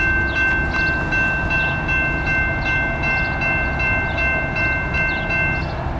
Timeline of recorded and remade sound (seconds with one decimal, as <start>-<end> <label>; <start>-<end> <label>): 0.0-6.0 recorded